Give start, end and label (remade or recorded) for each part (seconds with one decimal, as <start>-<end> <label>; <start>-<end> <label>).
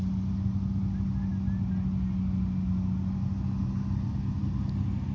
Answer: 0.0-5.1 recorded